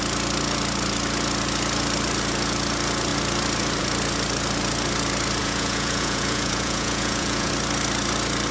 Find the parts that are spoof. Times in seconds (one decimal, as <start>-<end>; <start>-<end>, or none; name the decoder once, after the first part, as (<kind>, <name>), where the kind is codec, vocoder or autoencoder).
5.4-7.5 (vocoder, Vocos)